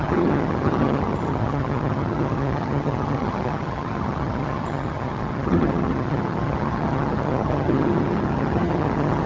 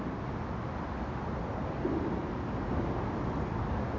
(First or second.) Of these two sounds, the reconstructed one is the first